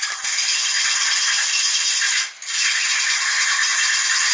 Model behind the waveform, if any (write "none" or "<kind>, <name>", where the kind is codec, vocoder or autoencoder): vocoder, BigVGAN v2